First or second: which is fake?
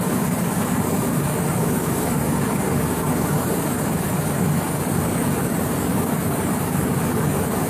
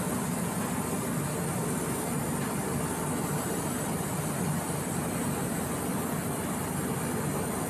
first